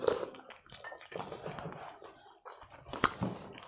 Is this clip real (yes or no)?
no